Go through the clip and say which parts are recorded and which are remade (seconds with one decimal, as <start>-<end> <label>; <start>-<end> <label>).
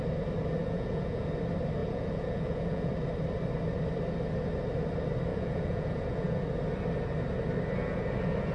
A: 0.0-0.6 recorded; 0.6-1.3 remade; 1.3-1.8 recorded; 1.8-2.9 remade; 2.9-5.3 recorded; 5.3-6.4 remade; 6.4-8.5 recorded